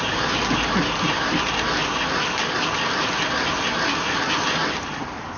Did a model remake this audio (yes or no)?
no